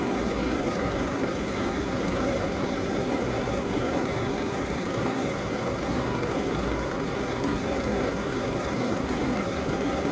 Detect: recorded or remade remade